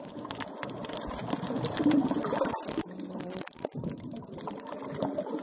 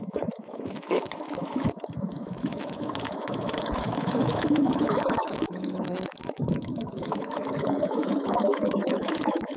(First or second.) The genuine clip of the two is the first